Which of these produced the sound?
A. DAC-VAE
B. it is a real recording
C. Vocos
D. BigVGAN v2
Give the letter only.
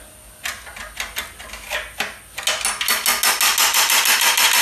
B